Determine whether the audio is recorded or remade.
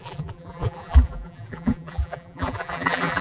remade